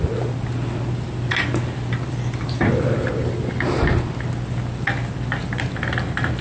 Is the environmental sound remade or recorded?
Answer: recorded